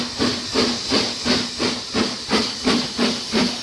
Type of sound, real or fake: real